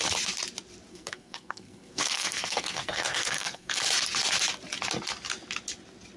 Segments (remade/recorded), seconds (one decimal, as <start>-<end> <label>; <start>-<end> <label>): 0.0-0.9 recorded; 0.9-3.8 remade; 3.8-6.2 recorded